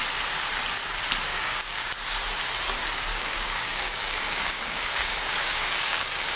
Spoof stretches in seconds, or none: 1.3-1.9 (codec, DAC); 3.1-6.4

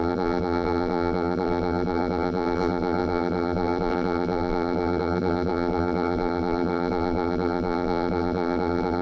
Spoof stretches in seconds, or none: 0.0-9.0 (vocoder, BigVGAN v2)